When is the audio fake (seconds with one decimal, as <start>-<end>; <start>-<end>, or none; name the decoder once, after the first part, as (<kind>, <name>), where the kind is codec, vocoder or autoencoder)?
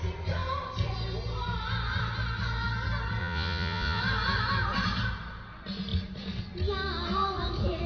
3.2-4.0 (vocoder, Vocos)